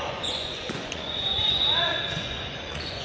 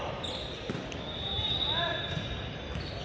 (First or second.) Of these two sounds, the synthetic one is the first